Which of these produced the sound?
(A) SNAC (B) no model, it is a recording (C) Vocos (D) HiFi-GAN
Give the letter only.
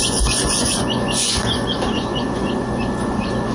C